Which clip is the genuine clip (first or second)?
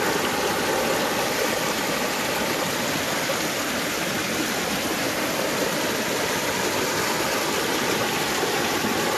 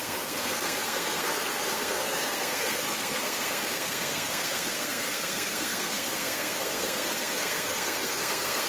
first